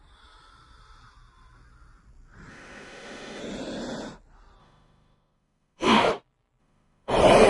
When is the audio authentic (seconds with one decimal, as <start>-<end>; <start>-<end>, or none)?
0.0-2.5; 3.4-4.6; 6.1-6.6; 7.1-7.5